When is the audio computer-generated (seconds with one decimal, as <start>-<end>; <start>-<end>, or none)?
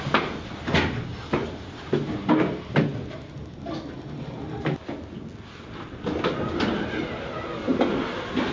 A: none